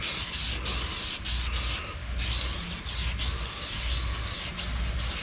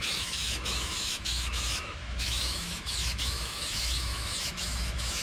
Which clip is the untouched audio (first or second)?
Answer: first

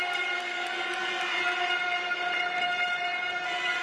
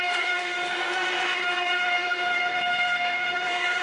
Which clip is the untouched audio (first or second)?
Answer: first